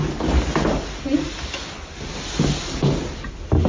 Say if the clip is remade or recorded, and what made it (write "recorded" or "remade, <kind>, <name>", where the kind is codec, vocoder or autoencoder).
recorded